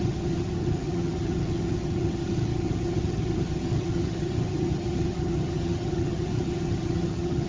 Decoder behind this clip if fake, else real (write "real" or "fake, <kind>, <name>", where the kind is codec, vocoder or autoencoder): fake, vocoder, HiFi-GAN